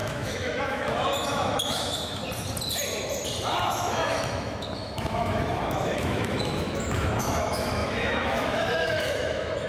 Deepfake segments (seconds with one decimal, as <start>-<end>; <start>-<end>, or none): 0.0-2.2; 3.7-9.7